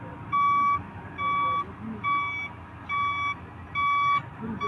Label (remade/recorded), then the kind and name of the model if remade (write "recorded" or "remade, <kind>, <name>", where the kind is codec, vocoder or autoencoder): recorded